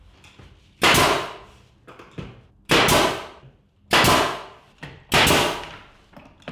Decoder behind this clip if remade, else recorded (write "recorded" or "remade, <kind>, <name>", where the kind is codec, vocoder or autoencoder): recorded